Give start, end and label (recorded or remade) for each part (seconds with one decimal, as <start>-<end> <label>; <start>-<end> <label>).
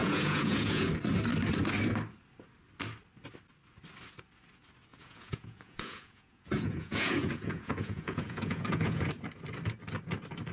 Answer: 0.0-0.9 remade; 0.9-4.9 recorded; 4.9-9.1 remade; 9.1-10.5 recorded